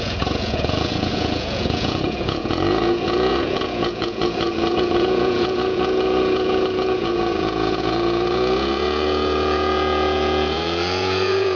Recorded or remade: remade